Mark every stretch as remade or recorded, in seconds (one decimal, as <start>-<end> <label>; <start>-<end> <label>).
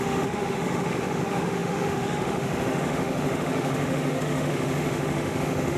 0.0-5.8 remade